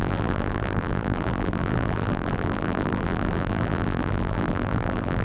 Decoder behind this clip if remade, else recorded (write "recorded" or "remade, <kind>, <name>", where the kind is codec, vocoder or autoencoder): remade, vocoder, BigVGAN v2